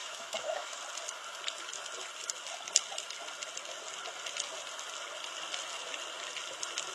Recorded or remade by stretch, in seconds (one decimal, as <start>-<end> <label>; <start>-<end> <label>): 0.0-0.8 remade; 0.8-6.9 recorded